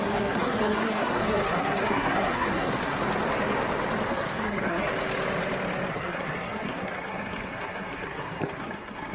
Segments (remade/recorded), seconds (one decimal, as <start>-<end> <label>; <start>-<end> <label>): 0.0-3.0 remade; 3.0-4.1 recorded; 4.1-4.9 remade; 4.9-5.9 recorded; 5.9-9.1 remade